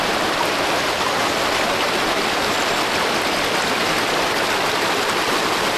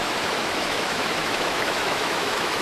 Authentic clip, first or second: first